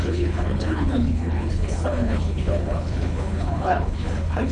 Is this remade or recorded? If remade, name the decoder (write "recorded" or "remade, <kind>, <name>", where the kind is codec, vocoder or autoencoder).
remade, codec, HILCodec